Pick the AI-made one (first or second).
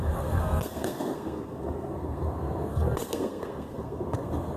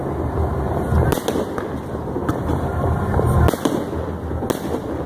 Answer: first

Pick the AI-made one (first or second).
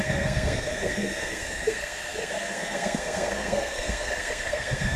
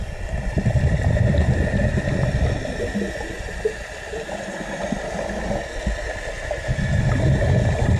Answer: first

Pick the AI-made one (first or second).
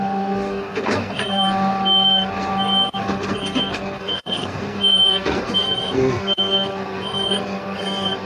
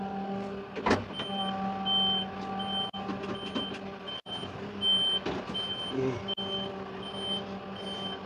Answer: first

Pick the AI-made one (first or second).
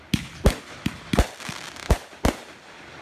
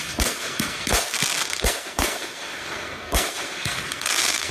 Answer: second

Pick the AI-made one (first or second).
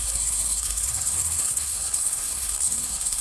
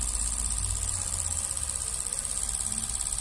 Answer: first